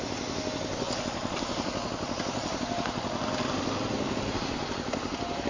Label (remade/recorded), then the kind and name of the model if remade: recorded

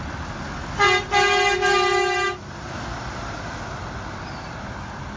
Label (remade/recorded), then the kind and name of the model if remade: recorded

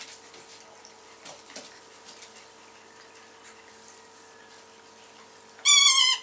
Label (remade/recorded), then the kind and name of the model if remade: recorded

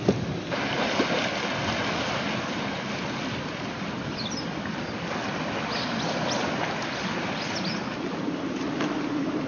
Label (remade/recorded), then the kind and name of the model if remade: recorded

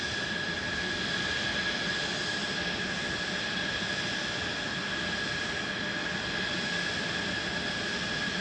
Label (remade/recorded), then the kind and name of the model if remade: recorded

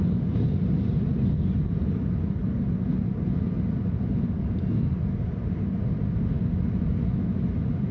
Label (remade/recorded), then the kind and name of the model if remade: recorded